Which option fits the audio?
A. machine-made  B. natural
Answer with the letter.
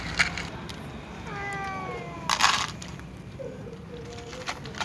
B